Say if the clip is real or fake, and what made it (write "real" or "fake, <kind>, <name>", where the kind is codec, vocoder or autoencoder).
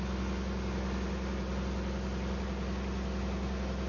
real